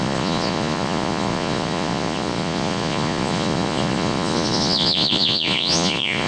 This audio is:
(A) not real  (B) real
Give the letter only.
A